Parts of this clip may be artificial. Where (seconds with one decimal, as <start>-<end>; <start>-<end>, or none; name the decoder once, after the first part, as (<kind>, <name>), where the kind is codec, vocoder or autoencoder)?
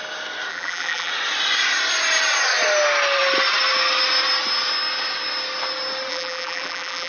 0.5-1.1 (vocoder, BigVGAN v2); 6.1-7.1